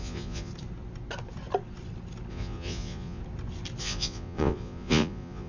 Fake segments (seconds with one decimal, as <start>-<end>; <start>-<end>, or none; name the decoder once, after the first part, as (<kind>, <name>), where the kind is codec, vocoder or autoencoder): 0.0-0.5 (vocoder, Vocos); 2.3-3.2; 3.8-5.5